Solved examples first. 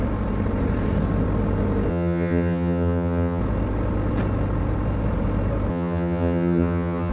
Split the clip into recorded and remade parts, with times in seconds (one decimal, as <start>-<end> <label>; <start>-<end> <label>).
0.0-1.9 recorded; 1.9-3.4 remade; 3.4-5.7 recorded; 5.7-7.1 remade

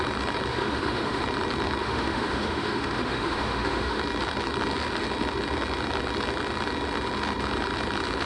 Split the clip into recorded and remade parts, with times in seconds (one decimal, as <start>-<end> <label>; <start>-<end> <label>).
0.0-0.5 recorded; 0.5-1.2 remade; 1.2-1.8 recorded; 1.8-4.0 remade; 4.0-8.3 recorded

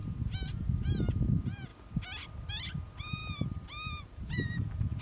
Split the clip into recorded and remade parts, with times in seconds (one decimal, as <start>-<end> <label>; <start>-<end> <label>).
0.0-5.0 recorded

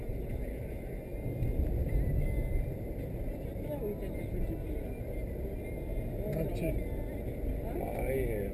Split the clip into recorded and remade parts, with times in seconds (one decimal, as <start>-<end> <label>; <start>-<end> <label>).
0.0-8.5 recorded